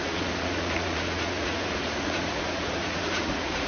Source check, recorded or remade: remade